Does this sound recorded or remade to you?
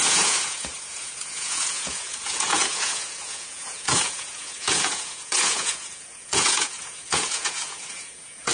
remade